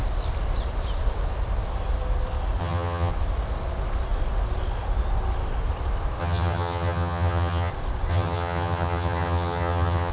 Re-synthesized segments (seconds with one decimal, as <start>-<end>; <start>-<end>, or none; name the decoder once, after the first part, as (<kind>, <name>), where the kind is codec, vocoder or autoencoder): 2.6-3.1 (vocoder, HiFi-GAN); 6.2-7.7; 8.1-10.1